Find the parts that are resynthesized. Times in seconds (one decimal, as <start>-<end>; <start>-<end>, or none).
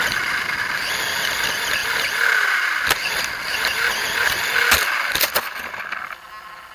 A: none